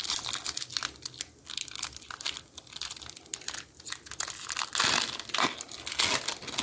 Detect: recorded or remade recorded